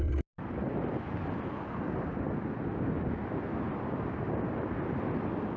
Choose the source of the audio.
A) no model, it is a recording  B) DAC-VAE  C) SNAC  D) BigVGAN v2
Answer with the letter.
A